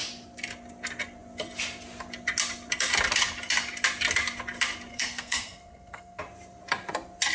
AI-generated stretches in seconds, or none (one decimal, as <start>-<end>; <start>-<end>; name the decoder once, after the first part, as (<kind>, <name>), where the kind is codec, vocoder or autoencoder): 4.9-6.2 (codec, SNAC)